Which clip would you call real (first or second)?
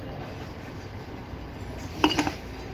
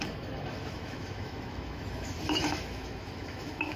first